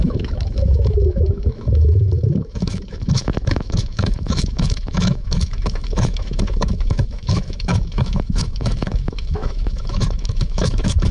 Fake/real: fake